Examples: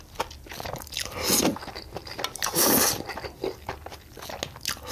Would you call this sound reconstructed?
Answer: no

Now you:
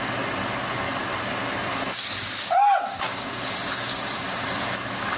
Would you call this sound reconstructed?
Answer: no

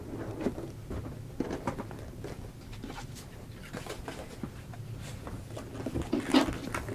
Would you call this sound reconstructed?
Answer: no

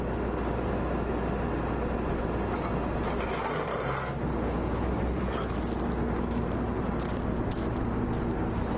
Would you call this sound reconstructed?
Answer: no